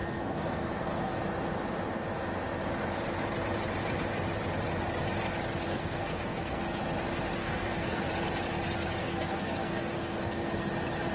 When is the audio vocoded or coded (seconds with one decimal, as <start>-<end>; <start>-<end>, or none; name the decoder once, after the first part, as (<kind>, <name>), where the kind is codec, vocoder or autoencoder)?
0.0-1.2 (codec, SNAC); 5.7-6.8; 7.4-8.1; 9.0-10.7